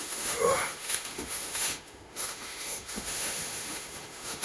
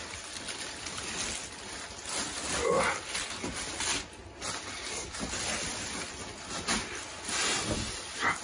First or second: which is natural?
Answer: second